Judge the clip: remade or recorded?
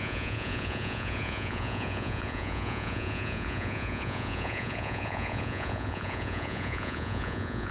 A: remade